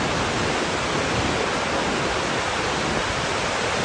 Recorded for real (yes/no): yes